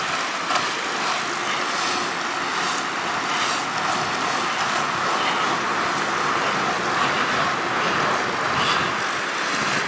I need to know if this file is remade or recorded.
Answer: recorded